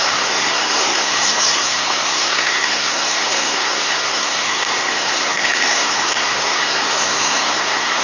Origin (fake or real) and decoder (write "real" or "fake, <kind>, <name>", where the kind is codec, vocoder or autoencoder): fake, codec, SNAC